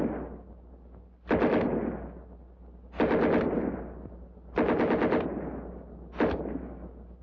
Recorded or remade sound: recorded